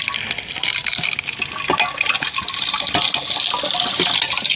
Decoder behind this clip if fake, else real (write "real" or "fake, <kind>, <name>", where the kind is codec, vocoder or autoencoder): real